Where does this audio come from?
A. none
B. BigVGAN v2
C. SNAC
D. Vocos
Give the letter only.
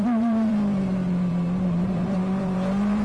B